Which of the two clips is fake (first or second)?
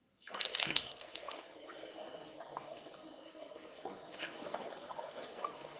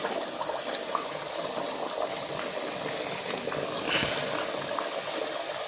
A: first